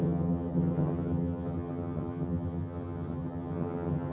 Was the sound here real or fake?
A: fake